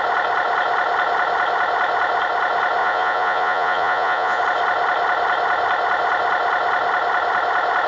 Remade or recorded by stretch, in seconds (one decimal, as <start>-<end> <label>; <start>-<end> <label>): 0.0-2.8 recorded; 2.8-4.4 remade; 4.4-7.9 recorded